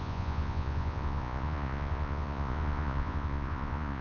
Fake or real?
fake